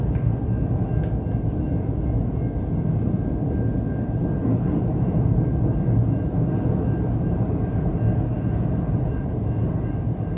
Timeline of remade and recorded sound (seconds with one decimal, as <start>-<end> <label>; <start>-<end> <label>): 0.0-4.2 recorded; 4.2-5.4 remade; 5.4-10.4 recorded